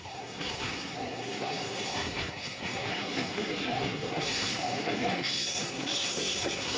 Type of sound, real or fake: fake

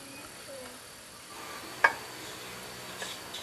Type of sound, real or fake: real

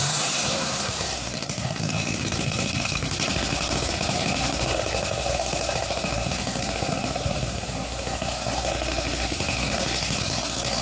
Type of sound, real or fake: fake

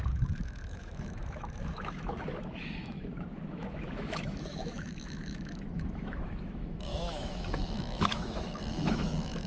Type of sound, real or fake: fake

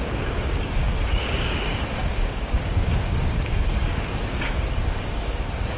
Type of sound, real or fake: fake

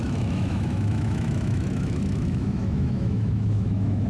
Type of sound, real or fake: fake